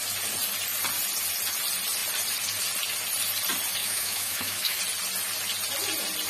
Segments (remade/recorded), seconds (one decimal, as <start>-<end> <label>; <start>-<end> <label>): 0.0-3.8 recorded; 3.8-4.8 remade; 4.8-6.3 recorded

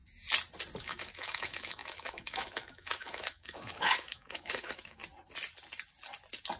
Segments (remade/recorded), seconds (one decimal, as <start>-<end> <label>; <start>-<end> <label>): 0.0-0.8 recorded; 0.8-5.0 remade; 5.0-6.6 recorded

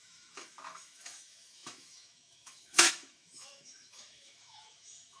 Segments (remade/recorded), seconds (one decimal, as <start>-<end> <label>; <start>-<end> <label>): 0.0-5.2 remade